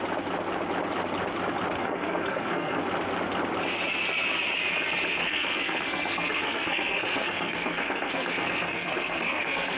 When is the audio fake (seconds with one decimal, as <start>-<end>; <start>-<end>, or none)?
1.8-2.8; 5.2-9.8